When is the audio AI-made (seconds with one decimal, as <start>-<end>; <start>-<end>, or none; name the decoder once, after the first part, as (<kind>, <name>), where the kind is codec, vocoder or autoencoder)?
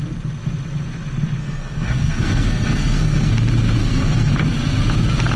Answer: 1.4-3.3 (codec, SNAC); 3.8-4.3